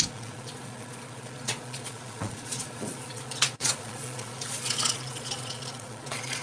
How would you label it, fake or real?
fake